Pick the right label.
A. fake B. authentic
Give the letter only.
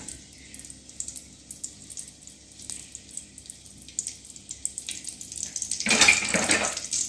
B